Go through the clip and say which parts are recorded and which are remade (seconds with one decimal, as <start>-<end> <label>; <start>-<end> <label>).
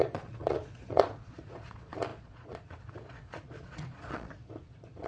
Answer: 0.0-5.1 remade